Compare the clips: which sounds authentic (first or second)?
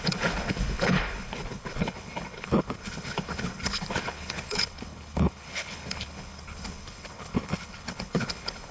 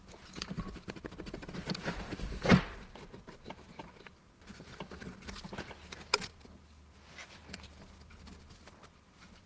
second